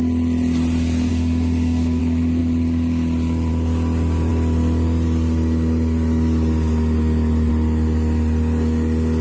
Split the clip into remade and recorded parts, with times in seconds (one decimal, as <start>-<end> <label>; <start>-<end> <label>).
0.0-1.1 recorded; 1.1-2.0 remade; 2.0-9.2 recorded